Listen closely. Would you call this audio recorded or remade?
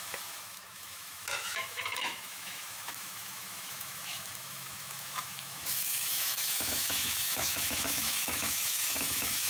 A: remade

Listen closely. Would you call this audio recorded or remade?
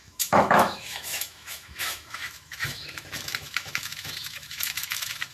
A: remade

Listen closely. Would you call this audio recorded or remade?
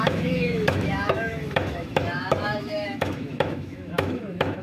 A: remade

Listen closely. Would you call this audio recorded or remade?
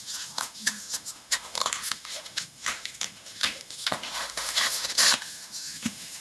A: remade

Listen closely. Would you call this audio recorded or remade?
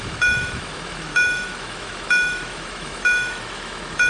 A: remade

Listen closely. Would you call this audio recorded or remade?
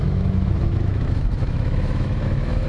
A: remade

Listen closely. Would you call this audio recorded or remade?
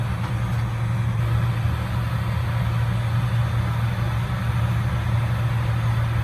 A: recorded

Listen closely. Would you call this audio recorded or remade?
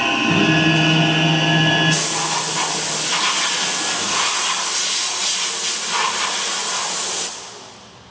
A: recorded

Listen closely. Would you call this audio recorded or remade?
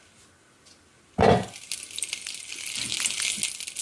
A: recorded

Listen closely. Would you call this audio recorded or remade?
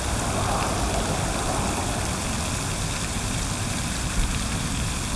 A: recorded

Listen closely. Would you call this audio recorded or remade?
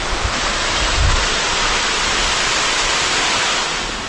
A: recorded